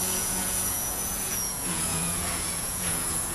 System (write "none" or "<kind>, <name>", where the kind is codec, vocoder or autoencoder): vocoder, Vocos